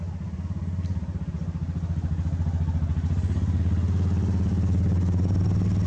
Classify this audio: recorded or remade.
recorded